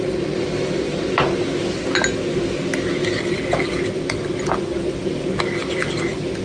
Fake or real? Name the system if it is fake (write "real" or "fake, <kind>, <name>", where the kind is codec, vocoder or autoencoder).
real